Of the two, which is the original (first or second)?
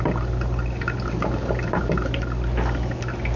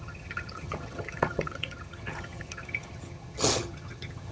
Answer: first